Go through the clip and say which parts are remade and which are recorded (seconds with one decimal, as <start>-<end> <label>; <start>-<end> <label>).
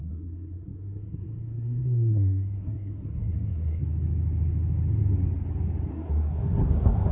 0.0-3.8 remade; 3.8-5.9 recorded; 5.9-7.1 remade